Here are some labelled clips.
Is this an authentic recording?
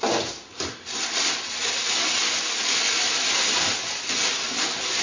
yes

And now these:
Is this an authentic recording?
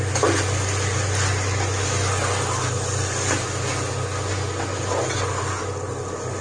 yes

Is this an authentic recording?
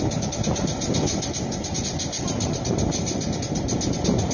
yes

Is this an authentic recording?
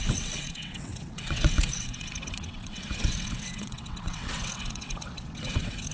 no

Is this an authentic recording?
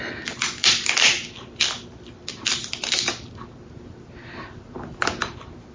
yes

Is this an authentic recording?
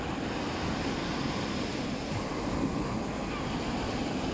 yes